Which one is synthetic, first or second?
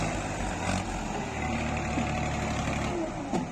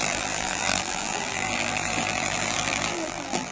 second